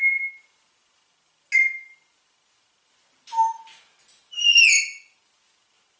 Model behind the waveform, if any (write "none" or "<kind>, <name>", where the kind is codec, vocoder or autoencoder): none